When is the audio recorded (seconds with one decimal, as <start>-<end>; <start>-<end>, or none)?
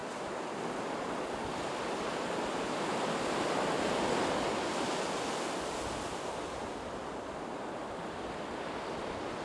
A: 0.0-9.4